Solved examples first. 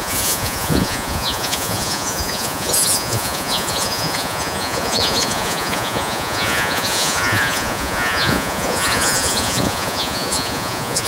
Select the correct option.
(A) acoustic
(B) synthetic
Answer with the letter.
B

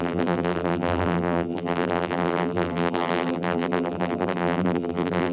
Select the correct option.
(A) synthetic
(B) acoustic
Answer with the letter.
A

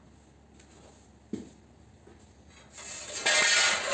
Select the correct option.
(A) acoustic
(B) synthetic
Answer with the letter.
A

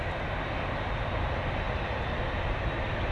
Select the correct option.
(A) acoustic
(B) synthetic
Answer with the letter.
A